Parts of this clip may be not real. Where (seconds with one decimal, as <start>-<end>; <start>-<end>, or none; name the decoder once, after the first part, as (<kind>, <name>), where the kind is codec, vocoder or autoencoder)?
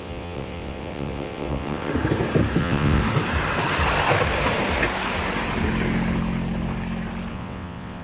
0.0-1.9 (vocoder, WaveNeXt); 2.6-3.0; 7.3-8.0